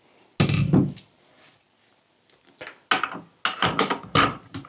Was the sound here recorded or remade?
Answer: recorded